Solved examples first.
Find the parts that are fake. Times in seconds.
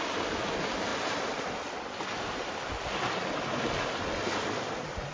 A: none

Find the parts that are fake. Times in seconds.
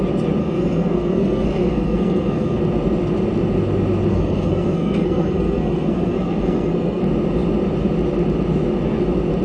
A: 0.4-2.6; 4.1-7.0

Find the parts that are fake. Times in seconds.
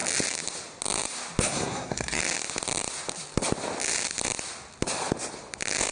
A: 1.4-2.2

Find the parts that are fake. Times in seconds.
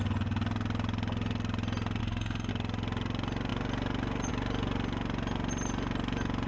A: 2.0-2.5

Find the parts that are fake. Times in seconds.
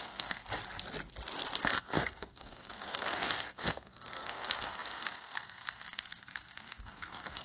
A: 0.0-0.4; 1.8-7.4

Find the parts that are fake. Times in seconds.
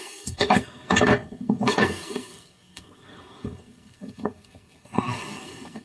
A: 0.0-5.8